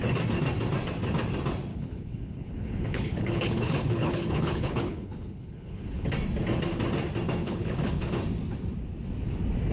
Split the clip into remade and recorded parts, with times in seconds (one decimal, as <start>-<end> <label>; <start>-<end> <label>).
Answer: 0.0-1.7 recorded; 1.7-6.1 remade; 6.1-7.4 recorded; 7.4-8.1 remade; 8.1-9.7 recorded